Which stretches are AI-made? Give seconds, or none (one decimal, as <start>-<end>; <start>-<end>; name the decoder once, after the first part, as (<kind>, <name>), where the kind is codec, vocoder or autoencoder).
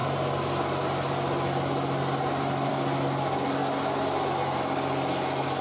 none